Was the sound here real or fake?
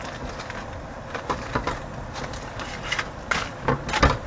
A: real